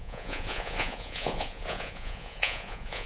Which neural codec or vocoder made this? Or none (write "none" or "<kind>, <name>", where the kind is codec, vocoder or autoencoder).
vocoder, Vocos